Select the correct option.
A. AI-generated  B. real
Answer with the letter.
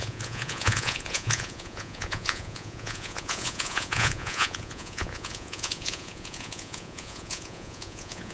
A